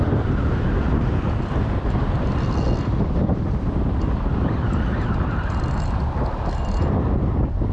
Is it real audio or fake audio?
real